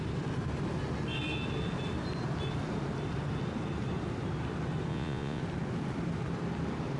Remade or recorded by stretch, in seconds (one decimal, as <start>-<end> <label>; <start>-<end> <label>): 0.0-4.9 recorded; 4.9-5.4 remade; 5.4-7.0 recorded